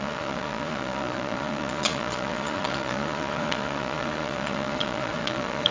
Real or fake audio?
fake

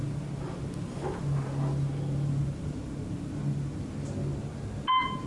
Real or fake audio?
real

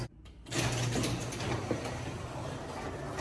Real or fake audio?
real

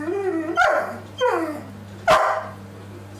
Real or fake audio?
real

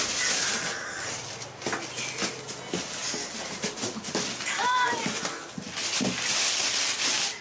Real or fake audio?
real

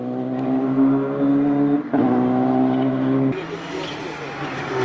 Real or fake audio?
real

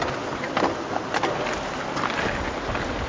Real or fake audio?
real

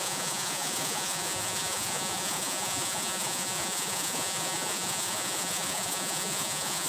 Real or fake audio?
fake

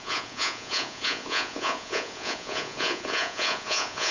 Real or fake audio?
fake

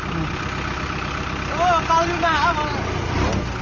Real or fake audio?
real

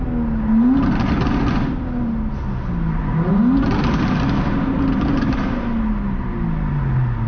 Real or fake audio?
real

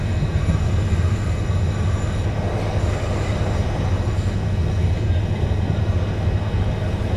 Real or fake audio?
real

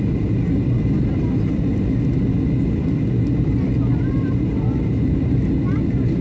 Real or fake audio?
real